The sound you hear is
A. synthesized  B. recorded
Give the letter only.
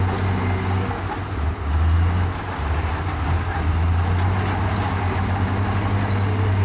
B